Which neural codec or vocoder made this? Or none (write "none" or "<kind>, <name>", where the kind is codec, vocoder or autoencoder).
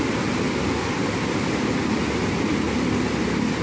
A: none